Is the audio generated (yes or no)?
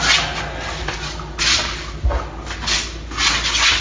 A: no